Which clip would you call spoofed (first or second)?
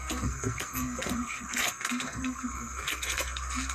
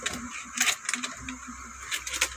first